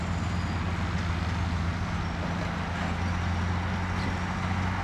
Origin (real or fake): real